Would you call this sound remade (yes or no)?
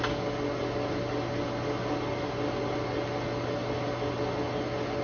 no